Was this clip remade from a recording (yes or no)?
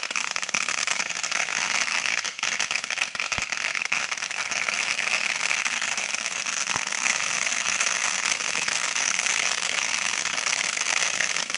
yes